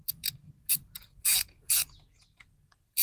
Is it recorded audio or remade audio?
remade